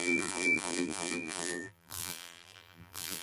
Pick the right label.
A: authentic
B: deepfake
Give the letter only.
B